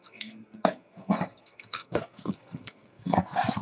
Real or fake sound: fake